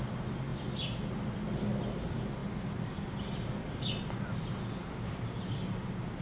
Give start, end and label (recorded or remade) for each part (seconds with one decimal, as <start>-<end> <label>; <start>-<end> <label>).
0.0-6.2 recorded